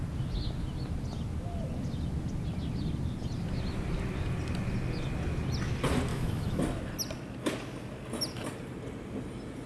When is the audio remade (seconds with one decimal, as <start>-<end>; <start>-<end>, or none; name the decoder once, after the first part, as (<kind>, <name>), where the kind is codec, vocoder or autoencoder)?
6.1-6.6 (autoencoder, DAC-VAE)